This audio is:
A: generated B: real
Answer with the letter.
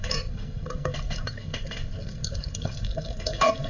A